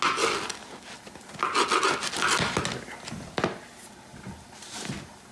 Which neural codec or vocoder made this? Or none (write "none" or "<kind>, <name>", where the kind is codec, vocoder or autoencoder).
none